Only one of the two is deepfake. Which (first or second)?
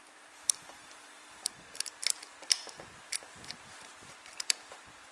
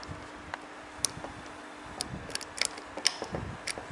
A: first